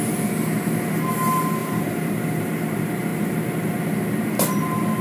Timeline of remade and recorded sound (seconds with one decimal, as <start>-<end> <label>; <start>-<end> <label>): 0.0-1.6 recorded; 1.6-2.5 remade; 2.5-5.0 recorded